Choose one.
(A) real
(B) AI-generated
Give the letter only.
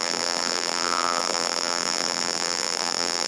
B